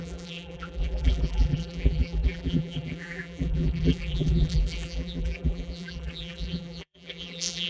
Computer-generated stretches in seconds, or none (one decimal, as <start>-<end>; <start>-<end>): 0.0-7.7